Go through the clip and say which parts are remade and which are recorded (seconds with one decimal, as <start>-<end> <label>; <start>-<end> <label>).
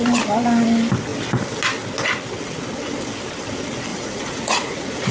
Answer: 0.0-3.9 recorded; 3.9-5.1 remade